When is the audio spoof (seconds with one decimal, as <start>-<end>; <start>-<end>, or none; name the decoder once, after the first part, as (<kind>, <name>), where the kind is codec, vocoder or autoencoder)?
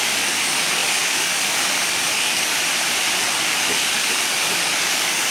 0.0-2.6 (codec, DAC); 3.2-5.3